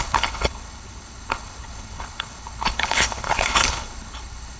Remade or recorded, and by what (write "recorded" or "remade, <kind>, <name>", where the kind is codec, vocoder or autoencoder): remade, codec, HILCodec